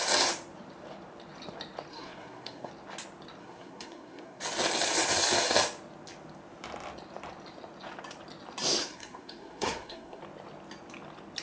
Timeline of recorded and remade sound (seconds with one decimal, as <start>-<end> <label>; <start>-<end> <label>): 0.0-1.9 recorded; 1.9-2.7 remade; 2.7-3.4 recorded; 3.4-4.4 remade; 4.4-8.8 recorded; 8.8-10.2 remade; 10.2-11.4 recorded